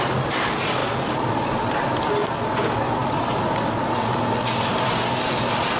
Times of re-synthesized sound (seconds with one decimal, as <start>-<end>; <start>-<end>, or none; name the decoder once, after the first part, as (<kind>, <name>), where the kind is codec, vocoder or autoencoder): none